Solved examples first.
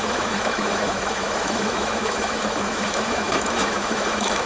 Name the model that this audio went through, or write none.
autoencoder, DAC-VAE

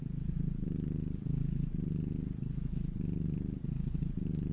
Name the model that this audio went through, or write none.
none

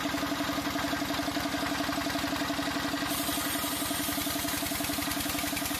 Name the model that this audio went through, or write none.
none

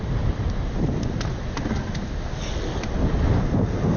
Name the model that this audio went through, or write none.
none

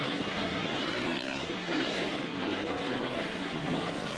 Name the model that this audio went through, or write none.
codec, SNAC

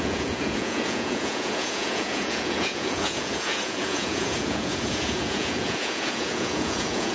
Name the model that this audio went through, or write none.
vocoder, Vocos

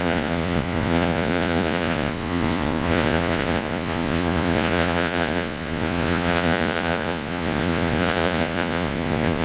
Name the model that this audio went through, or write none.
vocoder, Vocos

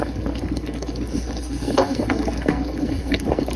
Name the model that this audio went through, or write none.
codec, SNAC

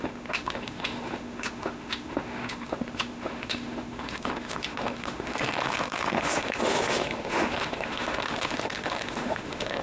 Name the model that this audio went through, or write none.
autoencoder, DAC-VAE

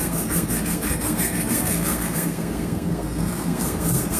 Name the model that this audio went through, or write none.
codec, SNAC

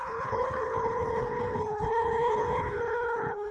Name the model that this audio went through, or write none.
codec, HILCodec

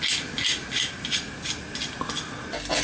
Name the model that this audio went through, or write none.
none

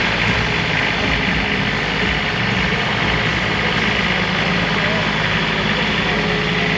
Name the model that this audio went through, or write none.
none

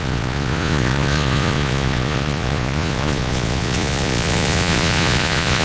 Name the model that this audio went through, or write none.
vocoder, Vocos